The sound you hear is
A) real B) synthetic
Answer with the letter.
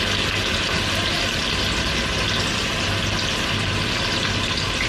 A